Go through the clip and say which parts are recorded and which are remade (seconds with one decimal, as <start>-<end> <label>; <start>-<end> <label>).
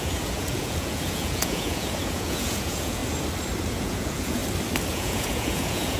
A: 0.0-3.0 remade; 3.0-3.7 recorded; 3.7-4.4 remade; 4.4-4.9 recorded; 4.9-6.0 remade